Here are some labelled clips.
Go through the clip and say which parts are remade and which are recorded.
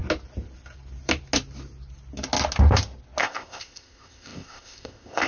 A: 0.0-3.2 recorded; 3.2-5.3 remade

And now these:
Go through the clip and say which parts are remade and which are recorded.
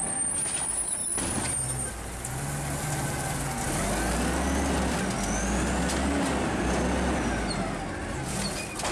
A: 0.0-1.0 recorded; 1.0-1.9 remade; 1.9-8.9 recorded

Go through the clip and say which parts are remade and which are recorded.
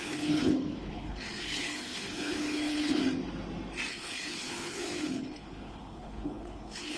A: 0.0-3.0 remade; 3.0-3.9 recorded; 3.9-7.0 remade